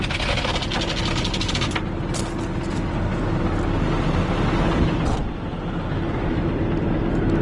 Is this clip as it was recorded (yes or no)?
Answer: yes